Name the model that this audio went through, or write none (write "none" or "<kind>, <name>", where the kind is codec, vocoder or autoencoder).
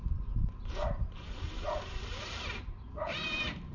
vocoder, BigVGAN v2